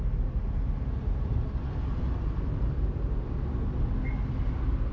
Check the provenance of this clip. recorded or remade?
recorded